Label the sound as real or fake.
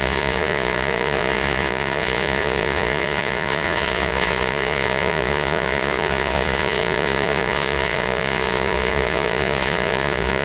fake